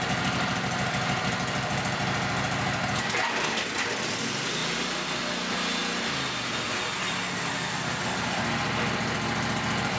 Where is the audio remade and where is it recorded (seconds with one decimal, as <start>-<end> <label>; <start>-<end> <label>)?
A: 0.0-10.0 recorded